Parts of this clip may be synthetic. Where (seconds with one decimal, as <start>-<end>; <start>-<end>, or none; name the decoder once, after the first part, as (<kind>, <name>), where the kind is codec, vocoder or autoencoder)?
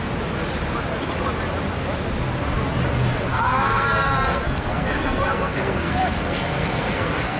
3.3-7.4 (codec, SNAC)